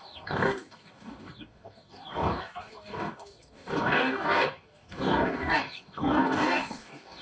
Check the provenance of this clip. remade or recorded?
remade